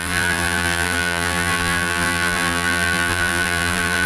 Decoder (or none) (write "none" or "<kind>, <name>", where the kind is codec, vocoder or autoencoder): vocoder, BigVGAN v2